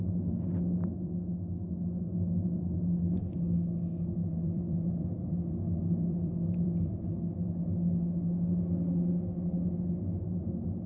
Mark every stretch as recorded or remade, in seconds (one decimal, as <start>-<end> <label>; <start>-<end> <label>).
0.0-4.2 recorded; 4.2-7.5 remade; 7.5-10.9 recorded